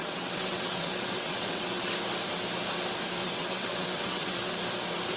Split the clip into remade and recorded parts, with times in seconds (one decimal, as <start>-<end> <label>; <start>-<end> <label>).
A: 0.0-1.9 remade; 1.9-3.2 recorded; 3.2-4.5 remade; 4.5-5.2 recorded